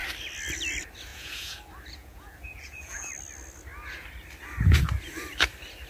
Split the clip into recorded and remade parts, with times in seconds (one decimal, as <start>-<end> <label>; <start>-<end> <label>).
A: 0.0-1.1 recorded; 1.1-1.6 remade; 1.6-2.0 recorded; 2.0-3.1 remade; 3.1-5.9 recorded